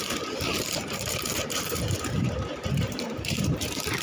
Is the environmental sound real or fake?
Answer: fake